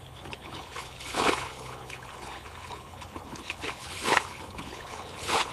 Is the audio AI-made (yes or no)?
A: yes